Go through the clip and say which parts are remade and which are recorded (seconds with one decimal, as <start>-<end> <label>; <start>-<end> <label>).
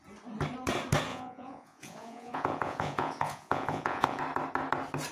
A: 0.0-1.1 recorded; 1.1-4.2 remade; 4.2-5.1 recorded